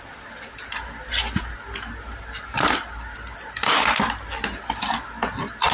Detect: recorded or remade recorded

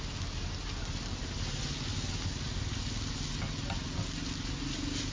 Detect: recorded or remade recorded